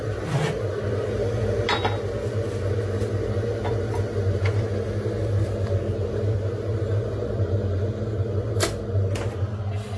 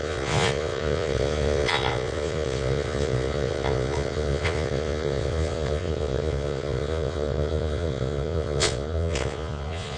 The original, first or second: first